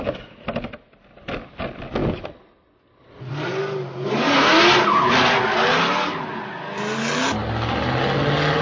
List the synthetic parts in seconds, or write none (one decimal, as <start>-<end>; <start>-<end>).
none